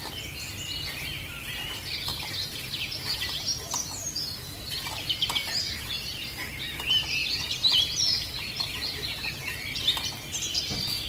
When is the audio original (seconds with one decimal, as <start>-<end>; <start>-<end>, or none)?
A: 0.0-2.1; 5.8-7.2; 9.5-11.1